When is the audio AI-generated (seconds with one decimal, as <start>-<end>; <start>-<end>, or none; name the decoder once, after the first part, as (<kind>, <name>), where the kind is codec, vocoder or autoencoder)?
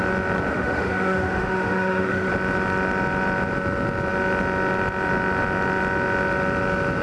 0.5-2.3 (autoencoder, DAC-VAE)